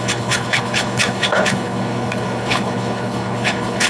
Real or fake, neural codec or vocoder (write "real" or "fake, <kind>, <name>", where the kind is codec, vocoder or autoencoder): fake, codec, HILCodec